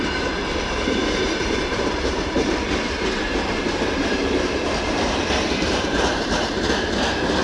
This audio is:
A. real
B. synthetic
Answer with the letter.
B